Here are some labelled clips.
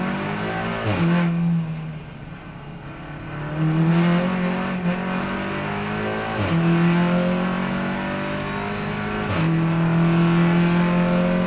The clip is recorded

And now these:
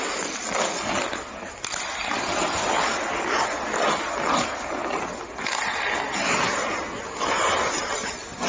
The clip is recorded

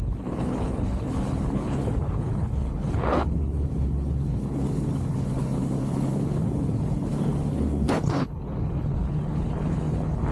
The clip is remade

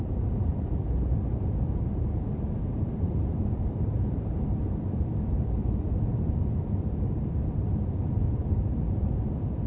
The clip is remade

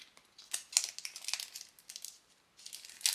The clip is recorded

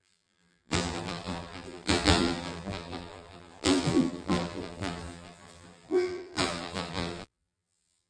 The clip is remade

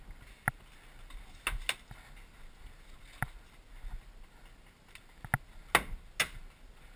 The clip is recorded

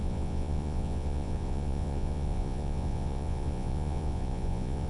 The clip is remade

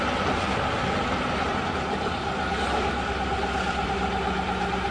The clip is recorded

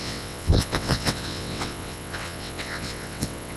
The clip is remade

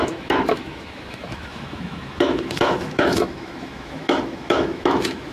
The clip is remade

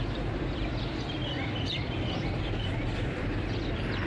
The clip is remade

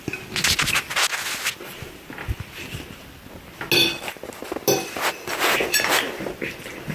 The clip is recorded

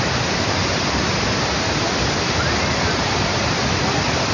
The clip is remade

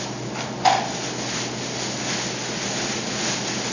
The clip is recorded